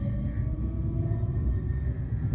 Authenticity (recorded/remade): recorded